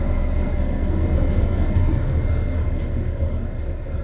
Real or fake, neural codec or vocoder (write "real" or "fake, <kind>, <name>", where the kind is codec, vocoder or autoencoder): fake, codec, SNAC